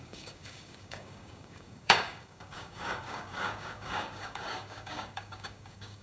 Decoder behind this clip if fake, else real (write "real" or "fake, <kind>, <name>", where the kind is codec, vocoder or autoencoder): fake, codec, DAC